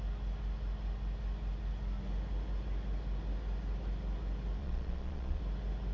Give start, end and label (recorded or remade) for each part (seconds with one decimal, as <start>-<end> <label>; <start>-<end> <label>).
0.0-4.6 recorded; 4.6-5.4 remade; 5.4-5.9 recorded